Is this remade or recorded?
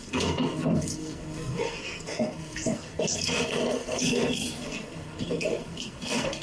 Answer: remade